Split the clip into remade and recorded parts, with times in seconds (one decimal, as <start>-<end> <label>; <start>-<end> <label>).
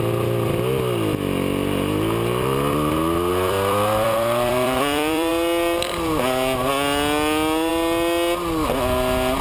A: 0.0-3.3 recorded; 3.3-5.3 remade; 5.3-9.4 recorded